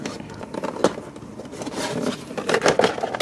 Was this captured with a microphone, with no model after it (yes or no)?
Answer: yes